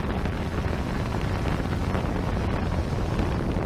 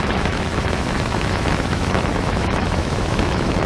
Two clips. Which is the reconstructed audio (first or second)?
second